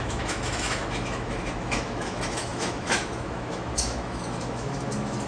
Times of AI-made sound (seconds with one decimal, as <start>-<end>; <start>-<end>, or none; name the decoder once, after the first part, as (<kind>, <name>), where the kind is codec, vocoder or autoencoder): 0.0-5.3 (autoencoder, DAC-VAE)